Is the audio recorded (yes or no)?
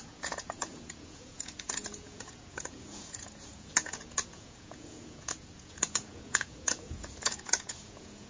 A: no